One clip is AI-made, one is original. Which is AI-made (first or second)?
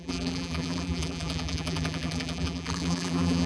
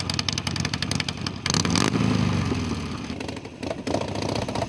first